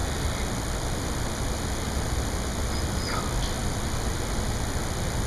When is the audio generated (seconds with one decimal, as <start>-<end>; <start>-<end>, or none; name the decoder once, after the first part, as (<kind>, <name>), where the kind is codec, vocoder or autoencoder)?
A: none